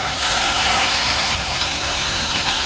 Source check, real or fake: fake